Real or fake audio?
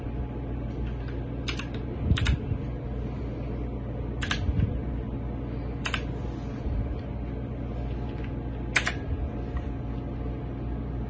real